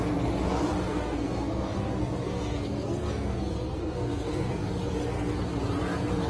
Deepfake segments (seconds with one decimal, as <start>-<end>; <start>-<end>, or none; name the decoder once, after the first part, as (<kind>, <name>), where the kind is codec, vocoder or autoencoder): 0.9-4.7 (codec, SNAC)